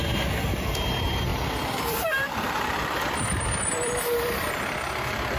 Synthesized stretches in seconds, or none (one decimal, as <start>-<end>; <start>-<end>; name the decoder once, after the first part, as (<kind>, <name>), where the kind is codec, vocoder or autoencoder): 1.3-4.5 (vocoder, BigVGAN v2)